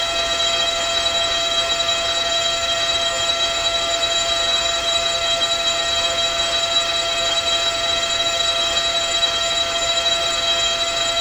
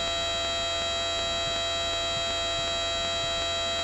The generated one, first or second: first